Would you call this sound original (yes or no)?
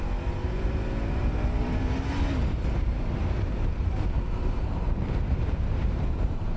no